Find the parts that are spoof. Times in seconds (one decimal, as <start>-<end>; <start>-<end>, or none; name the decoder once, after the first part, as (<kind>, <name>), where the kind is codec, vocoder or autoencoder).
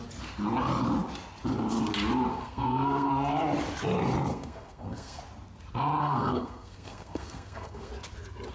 2.3-3.1 (codec, SNAC); 4.3-5.2; 6.0-7.9